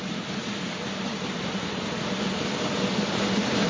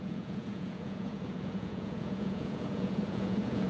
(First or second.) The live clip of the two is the first